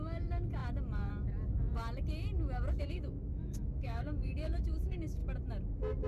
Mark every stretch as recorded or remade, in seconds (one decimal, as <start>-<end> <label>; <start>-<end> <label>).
0.0-0.6 remade; 0.6-2.8 recorded; 2.8-5.2 remade; 5.2-6.1 recorded